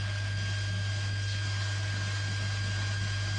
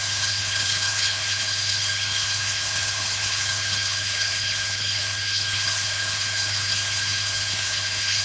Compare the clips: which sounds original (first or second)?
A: first